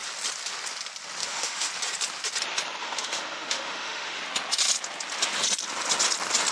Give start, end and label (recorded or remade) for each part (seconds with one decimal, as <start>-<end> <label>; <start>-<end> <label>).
0.0-1.2 recorded; 1.2-1.7 remade; 1.7-2.8 recorded; 2.8-4.2 remade; 4.2-6.5 recorded